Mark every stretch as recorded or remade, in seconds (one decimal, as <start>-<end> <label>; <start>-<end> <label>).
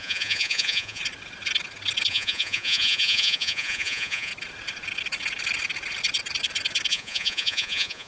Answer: 0.0-1.0 remade; 1.0-2.1 recorded; 2.1-4.3 remade; 4.3-6.9 recorded; 6.9-8.1 remade